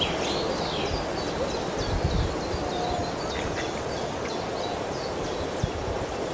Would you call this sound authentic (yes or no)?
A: yes